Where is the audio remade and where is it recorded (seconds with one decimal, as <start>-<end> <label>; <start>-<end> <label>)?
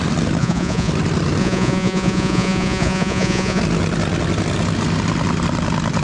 0.0-0.4 recorded; 0.4-0.9 remade; 0.9-1.4 recorded; 1.4-3.6 remade; 3.6-6.0 recorded